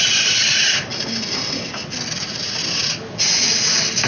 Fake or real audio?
real